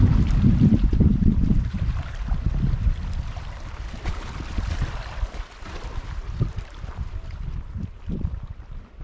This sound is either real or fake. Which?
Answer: fake